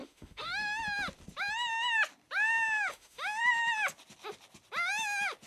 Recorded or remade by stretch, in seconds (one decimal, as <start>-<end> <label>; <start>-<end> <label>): 0.0-0.8 remade; 0.8-2.9 recorded; 2.9-3.4 remade; 3.4-5.5 recorded